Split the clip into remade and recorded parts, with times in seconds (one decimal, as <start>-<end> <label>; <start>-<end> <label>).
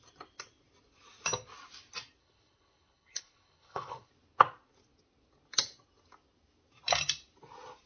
0.0-2.2 recorded; 2.2-4.1 remade; 4.1-7.9 recorded